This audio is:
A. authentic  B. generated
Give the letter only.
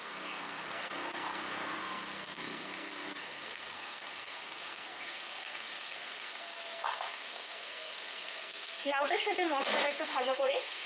B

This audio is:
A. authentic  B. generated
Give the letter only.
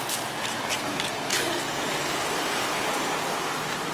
A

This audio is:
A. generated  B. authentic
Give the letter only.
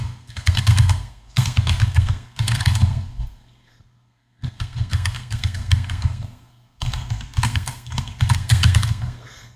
A